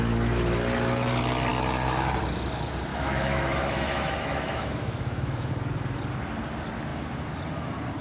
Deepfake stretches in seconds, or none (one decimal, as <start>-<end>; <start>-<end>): 2.9-5.5